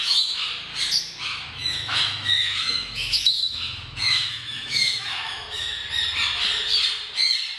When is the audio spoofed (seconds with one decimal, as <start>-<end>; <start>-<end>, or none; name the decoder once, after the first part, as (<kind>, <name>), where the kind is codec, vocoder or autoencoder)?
0.0-0.5 (autoencoder, DAC-VAE); 1.2-5.8